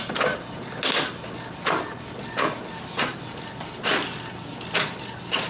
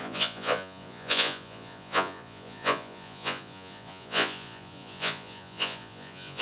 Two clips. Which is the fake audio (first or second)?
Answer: second